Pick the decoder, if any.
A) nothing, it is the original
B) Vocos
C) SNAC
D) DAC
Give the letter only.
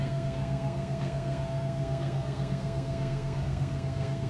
C